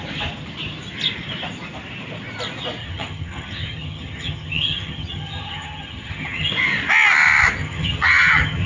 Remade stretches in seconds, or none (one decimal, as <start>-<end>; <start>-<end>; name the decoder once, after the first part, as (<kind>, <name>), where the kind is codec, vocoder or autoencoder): 2.8-6.5 (vocoder, HiFi-GAN); 7.6-8.7